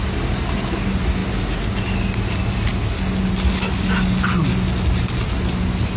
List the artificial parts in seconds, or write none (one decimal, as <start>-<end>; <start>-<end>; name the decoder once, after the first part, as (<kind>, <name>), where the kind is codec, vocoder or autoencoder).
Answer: none